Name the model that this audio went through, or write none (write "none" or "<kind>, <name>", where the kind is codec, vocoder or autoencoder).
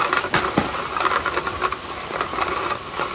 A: none